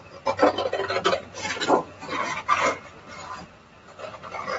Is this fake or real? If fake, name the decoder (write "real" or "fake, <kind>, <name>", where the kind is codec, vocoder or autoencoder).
real